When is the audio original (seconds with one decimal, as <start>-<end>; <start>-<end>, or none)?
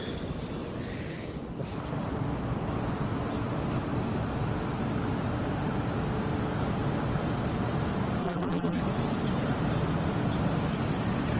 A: 0.0-8.2; 8.8-11.4